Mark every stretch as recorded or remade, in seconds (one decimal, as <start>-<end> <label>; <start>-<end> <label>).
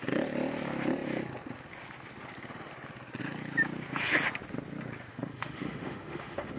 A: 0.0-5.1 recorded; 5.1-6.6 remade